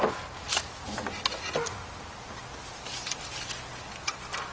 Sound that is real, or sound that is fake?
real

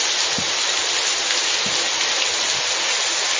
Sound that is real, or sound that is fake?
real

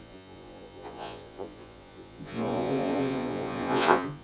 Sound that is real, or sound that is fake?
fake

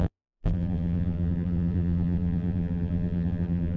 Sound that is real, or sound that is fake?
fake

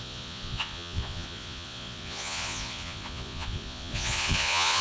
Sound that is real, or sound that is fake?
fake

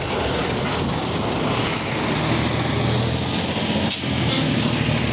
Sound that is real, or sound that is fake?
real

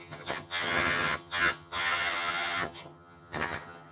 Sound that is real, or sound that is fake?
fake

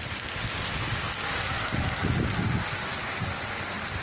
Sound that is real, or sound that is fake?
real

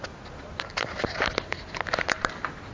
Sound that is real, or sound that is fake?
real